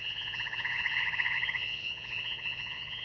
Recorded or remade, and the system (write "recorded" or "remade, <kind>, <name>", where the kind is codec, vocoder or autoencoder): remade, vocoder, Vocos